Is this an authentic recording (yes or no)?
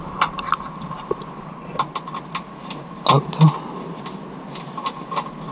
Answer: yes